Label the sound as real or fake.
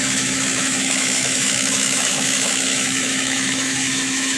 fake